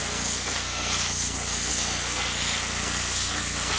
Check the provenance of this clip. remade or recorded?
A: remade